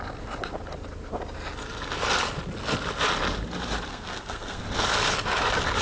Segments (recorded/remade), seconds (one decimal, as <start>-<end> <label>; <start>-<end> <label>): 0.0-3.9 recorded; 3.9-4.6 remade; 4.6-5.8 recorded